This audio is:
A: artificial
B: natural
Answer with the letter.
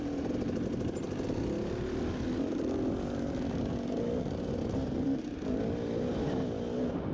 B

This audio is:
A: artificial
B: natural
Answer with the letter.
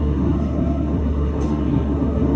A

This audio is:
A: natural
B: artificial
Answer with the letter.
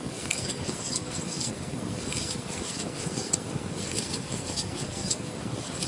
B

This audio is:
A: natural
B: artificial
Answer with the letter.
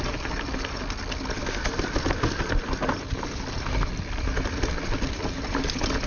A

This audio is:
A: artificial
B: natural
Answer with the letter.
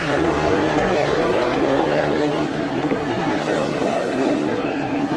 A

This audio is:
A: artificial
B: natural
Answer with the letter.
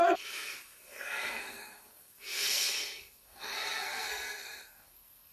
A